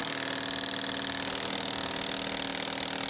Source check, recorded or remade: recorded